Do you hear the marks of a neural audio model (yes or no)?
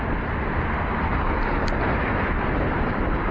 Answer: no